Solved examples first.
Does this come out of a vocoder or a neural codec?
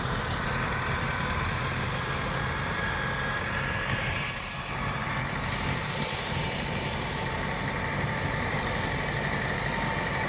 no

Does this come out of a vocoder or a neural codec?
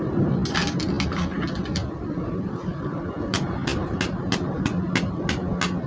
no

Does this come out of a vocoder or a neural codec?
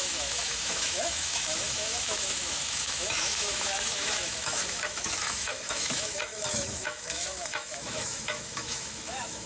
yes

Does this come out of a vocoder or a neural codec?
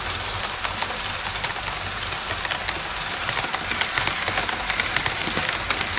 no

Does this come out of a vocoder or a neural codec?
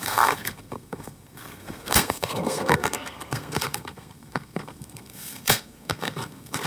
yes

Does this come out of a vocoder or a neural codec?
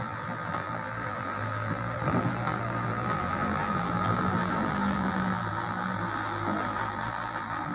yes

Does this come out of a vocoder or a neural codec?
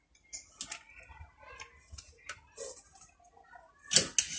no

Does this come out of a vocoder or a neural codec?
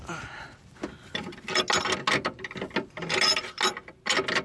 no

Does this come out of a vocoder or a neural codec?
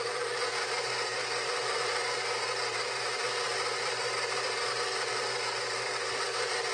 yes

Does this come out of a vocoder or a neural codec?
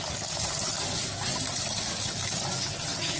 no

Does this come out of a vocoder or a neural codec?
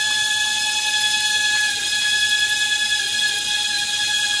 no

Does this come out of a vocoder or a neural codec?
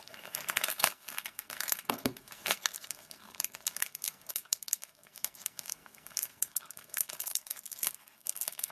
yes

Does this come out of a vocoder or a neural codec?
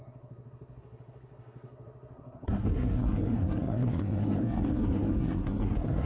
yes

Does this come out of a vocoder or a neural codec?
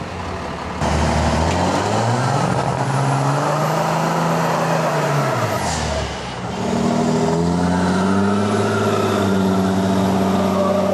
no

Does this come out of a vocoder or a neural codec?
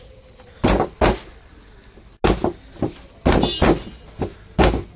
no